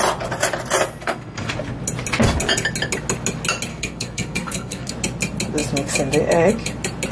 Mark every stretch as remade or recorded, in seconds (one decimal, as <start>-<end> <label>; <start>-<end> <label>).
0.0-1.0 recorded; 1.0-1.5 remade; 1.5-3.7 recorded; 3.7-4.9 remade; 4.9-7.1 recorded